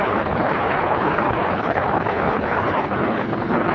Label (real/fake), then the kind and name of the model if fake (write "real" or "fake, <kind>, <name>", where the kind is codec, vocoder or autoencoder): fake, codec, HILCodec